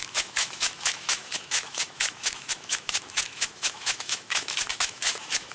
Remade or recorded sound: remade